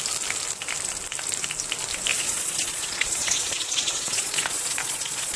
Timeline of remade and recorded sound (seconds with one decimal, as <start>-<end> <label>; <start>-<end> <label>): 0.0-2.1 recorded; 2.1-5.4 remade